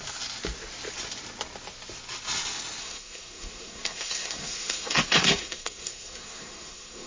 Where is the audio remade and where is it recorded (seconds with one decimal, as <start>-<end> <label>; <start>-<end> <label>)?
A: 0.0-2.8 recorded; 2.8-7.1 remade